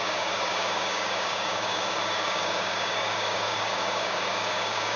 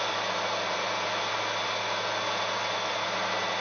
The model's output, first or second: first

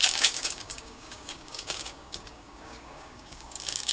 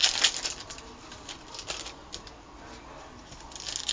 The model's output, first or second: first